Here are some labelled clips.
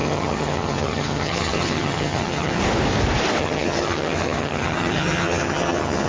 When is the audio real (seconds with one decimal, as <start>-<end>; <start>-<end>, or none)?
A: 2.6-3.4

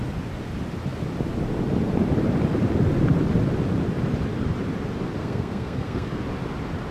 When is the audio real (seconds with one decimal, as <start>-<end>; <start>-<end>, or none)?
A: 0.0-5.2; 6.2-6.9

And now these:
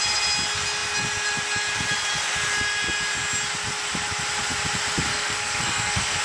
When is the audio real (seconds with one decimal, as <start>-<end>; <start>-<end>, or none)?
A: 0.0-5.1

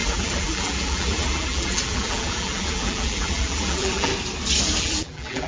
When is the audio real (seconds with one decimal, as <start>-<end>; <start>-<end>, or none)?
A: 4.1-4.8